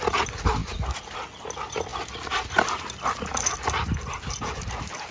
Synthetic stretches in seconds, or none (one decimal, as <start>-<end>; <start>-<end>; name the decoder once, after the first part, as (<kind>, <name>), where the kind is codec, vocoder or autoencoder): none